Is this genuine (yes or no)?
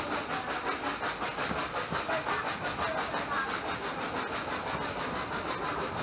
yes